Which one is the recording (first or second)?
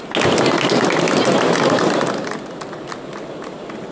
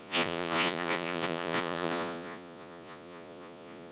first